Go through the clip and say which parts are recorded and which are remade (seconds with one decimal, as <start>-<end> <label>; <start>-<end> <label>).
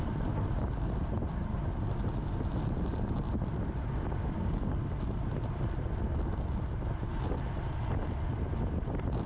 0.0-4.0 recorded; 4.0-4.8 remade; 4.8-9.3 recorded